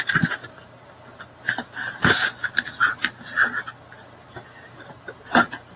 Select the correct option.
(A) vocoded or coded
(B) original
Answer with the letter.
B